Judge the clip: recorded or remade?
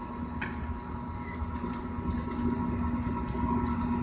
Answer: recorded